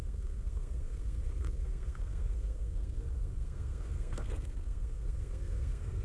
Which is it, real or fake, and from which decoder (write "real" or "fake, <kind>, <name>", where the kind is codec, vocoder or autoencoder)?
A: fake, codec, SNAC